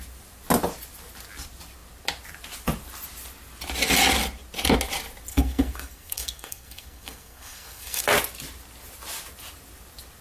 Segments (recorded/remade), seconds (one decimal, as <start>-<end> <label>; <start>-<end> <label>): 0.0-5.3 recorded; 5.3-8.0 remade; 8.0-10.2 recorded